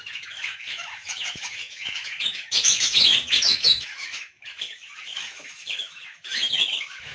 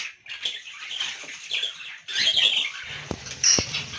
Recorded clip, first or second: second